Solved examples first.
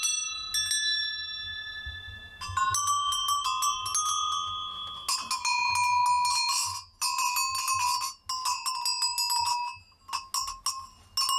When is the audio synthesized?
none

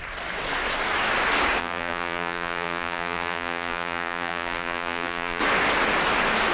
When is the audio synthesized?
1.6-5.4 (vocoder, BigVGAN v2)